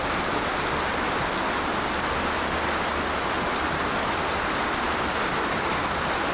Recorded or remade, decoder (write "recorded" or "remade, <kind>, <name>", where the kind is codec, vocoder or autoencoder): recorded